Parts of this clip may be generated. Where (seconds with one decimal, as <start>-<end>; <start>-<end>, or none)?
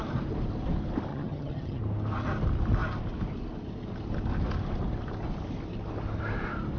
1.1-1.8